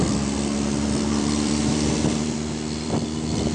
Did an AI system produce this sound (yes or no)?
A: yes